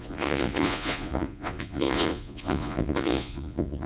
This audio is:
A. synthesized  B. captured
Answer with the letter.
A